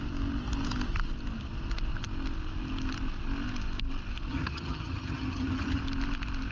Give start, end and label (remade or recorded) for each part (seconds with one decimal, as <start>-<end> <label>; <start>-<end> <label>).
0.0-4.3 recorded; 4.3-5.8 remade; 5.8-6.5 recorded